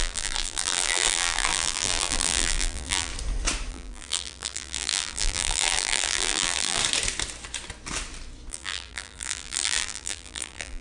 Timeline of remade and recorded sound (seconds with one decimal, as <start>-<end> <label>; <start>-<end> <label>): 0.0-3.1 remade; 3.1-3.7 recorded; 3.7-6.8 remade; 6.8-8.5 recorded; 8.5-10.8 remade